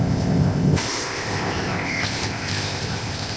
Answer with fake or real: fake